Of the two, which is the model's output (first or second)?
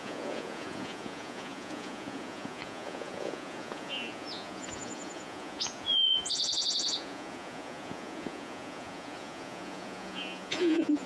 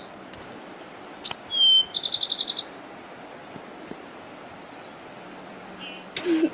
first